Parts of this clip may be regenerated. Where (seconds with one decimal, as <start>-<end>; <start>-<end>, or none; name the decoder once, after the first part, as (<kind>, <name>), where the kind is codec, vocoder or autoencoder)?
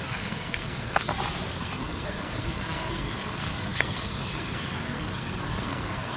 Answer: 0.0-1.1 (codec, SNAC); 1.6-6.2